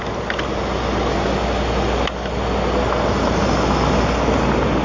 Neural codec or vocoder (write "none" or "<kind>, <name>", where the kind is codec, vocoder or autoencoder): none